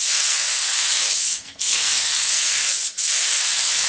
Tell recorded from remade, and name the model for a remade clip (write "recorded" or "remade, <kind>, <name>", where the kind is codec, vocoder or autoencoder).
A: remade, codec, SNAC